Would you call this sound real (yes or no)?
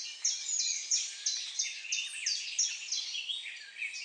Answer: yes